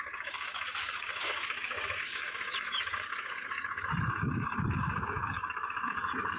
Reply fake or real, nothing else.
fake